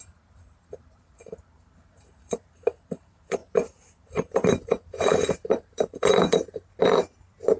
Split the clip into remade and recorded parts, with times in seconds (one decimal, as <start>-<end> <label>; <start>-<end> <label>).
0.0-7.6 remade